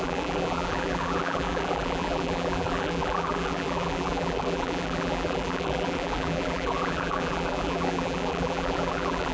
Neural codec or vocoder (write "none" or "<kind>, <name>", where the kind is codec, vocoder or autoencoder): vocoder, BigVGAN v2